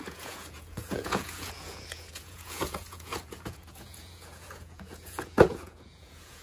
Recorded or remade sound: remade